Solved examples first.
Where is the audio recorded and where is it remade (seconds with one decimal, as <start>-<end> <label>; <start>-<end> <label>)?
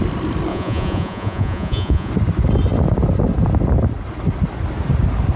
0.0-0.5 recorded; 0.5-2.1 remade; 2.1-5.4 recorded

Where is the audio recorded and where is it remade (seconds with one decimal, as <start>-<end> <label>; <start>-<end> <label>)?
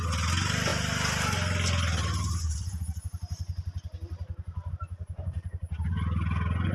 0.0-6.7 recorded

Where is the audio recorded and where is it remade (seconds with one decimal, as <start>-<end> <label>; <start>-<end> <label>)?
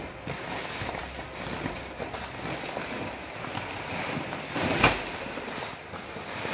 0.0-6.5 recorded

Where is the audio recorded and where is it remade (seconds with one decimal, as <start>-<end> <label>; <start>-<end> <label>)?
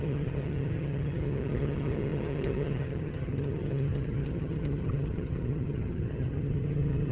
0.0-7.1 remade